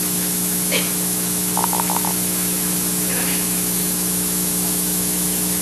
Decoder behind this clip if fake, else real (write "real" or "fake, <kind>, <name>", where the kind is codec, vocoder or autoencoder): fake, autoencoder, DAC-VAE